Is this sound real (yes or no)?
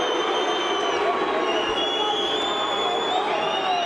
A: yes